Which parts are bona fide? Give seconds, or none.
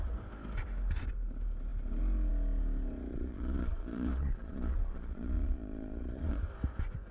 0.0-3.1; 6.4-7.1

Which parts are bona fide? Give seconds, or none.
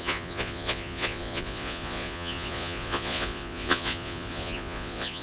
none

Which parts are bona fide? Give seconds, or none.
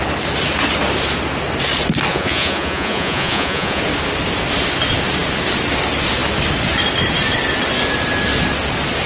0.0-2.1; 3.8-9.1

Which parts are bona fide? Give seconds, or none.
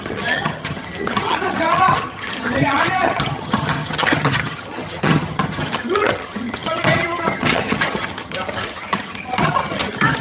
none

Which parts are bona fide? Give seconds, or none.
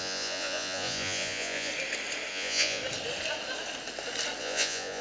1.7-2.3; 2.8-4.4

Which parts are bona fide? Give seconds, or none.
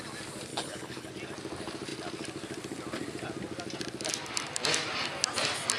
0.0-0.5; 1.1-5.8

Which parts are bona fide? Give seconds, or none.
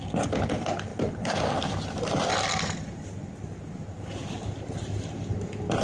0.0-5.8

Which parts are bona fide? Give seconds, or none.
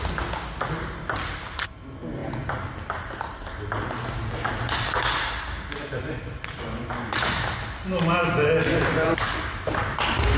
0.0-10.4